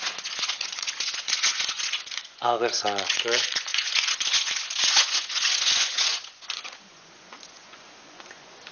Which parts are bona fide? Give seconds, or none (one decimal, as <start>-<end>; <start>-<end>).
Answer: none